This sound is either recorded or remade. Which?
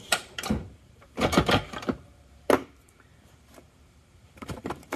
remade